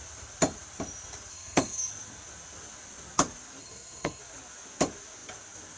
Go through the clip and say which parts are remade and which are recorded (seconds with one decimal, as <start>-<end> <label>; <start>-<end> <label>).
0.0-1.3 recorded; 1.3-1.9 remade; 1.9-3.6 recorded; 3.6-4.2 remade; 4.2-5.8 recorded